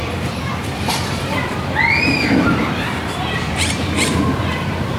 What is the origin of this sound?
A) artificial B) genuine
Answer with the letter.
A